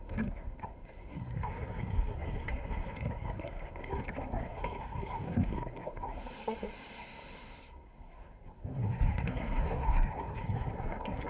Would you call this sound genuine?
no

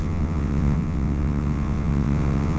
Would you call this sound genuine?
no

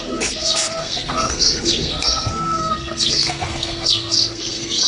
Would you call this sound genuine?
no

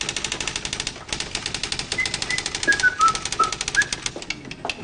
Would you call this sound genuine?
yes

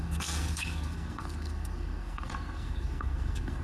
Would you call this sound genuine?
no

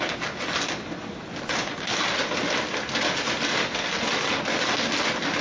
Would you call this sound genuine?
yes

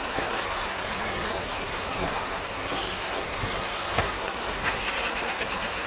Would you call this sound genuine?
no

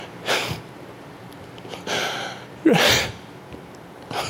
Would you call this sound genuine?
yes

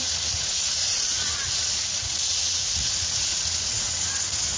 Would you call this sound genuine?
no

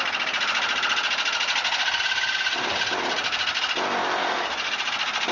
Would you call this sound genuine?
yes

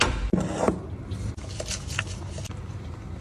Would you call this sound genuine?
yes